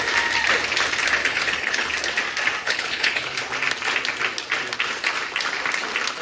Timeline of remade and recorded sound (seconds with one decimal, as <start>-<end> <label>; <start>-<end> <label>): 0.0-1.2 recorded; 1.2-1.9 remade; 1.9-2.6 recorded; 2.6-3.4 remade; 3.4-6.2 recorded

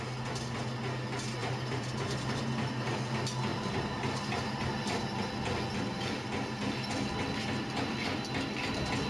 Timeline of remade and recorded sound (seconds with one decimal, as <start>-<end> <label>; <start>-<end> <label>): 0.0-1.4 recorded; 1.4-3.0 remade; 3.0-3.5 recorded; 3.5-5.3 remade; 5.3-9.1 recorded

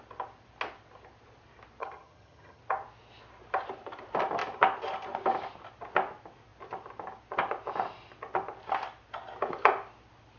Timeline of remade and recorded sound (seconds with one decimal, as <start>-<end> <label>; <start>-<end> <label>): 0.0-1.8 recorded; 1.8-2.6 remade; 2.6-10.4 recorded

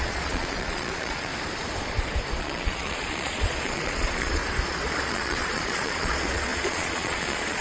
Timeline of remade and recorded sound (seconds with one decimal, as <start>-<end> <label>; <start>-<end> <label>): 0.0-1.3 remade; 1.3-2.4 recorded; 2.4-4.4 remade; 4.4-5.1 recorded; 5.1-7.6 remade

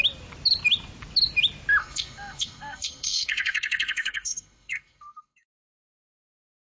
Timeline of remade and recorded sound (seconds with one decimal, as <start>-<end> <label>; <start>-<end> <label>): 0.0-1.8 recorded; 1.8-5.7 remade; 5.7-6.6 recorded